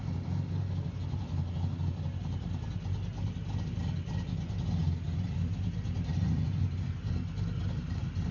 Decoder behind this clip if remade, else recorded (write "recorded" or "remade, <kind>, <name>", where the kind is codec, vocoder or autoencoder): recorded